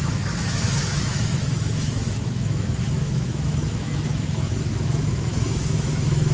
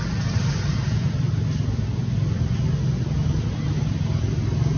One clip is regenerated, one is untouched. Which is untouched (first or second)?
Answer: second